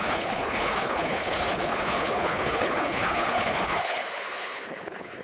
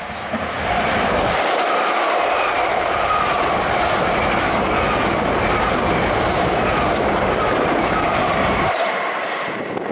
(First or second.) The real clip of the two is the second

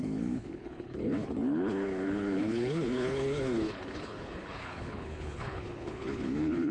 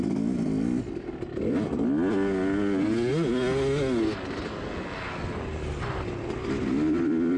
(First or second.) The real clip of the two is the second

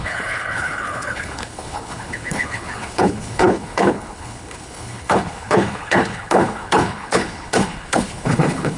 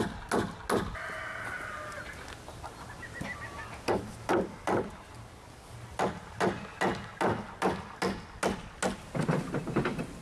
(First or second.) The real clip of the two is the second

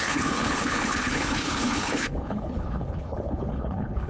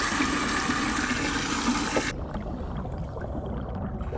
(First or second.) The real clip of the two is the second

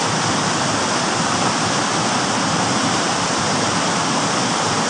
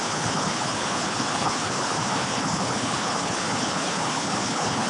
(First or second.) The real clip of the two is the first